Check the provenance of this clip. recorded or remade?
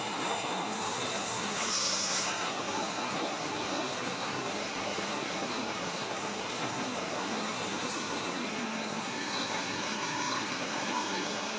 remade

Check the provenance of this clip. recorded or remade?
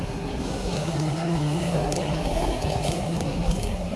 remade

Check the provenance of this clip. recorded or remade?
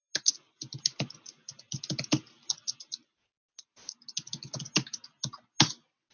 recorded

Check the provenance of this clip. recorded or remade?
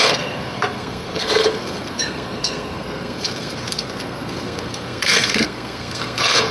remade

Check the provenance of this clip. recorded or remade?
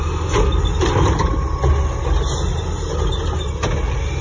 recorded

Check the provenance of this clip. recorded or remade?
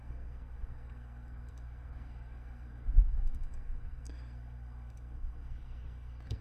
remade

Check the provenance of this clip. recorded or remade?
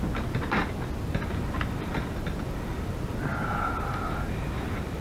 recorded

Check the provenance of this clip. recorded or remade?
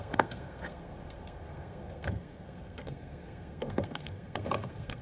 remade